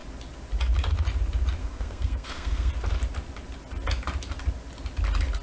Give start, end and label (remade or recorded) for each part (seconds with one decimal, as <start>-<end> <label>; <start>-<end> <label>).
0.0-1.6 recorded; 1.6-2.7 remade; 2.7-5.4 recorded